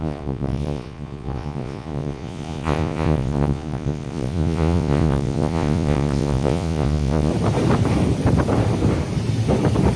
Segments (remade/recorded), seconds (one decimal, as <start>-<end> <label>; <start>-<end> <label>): 0.0-7.3 remade; 7.3-10.0 recorded